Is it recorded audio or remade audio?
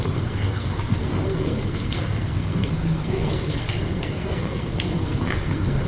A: remade